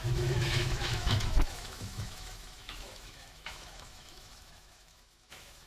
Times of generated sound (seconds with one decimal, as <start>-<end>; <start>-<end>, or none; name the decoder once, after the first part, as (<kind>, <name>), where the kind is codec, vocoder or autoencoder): 0.0-5.7 (autoencoder, DAC-VAE)

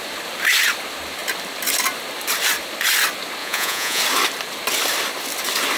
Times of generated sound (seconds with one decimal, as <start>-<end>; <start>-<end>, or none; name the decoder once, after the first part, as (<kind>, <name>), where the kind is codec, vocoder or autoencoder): 3.4-4.0 (vocoder, Vocos)

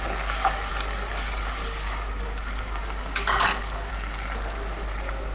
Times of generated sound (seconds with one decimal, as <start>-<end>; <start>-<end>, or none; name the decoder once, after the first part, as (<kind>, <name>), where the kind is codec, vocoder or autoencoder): 0.7-3.9 (codec, DAC)